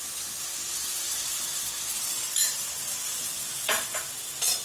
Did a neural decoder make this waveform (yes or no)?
yes